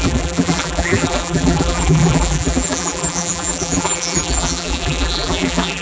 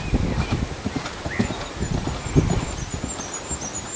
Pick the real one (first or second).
second